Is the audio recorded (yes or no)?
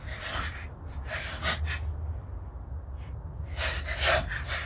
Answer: yes